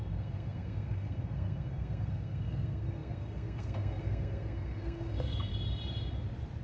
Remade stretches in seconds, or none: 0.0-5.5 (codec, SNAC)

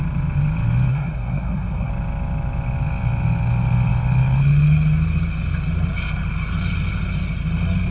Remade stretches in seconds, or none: 0.9-1.9 (codec, SNAC)

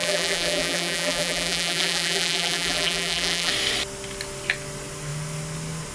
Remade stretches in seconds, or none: 0.0-3.5 (vocoder, BigVGAN v2)

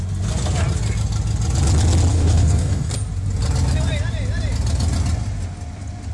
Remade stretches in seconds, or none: 2.1-2.9 (codec, DAC)

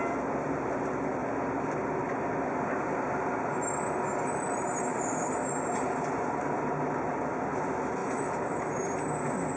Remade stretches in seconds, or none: 4.9-6.4 (vocoder, BigVGAN v2); 8.0-8.6

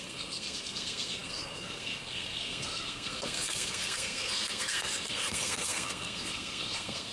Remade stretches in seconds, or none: 0.0-7.1 (codec, SNAC)

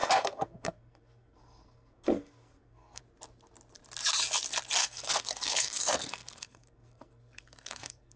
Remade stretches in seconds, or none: 0.0-3.0 (codec, SNAC); 4.8-8.2

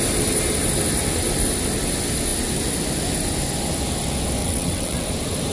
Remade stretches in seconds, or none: 4.4-5.1 (vocoder, WaveNeXt)